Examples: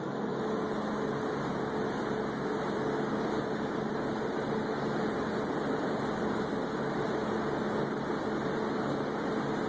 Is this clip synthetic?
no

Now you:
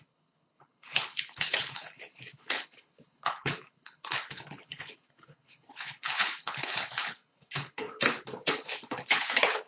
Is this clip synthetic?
yes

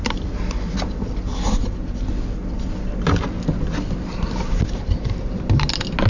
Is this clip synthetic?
no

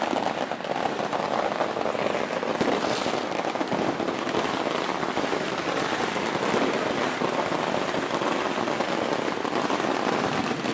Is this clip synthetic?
no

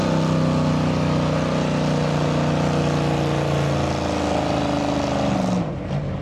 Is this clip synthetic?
no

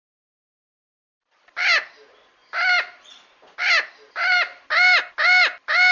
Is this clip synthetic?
no